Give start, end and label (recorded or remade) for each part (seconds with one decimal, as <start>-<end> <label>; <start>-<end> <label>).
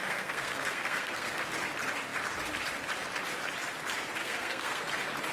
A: 0.0-1.5 remade; 1.5-4.2 recorded; 4.2-4.8 remade; 4.8-5.3 recorded